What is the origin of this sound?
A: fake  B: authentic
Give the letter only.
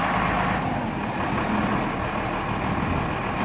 B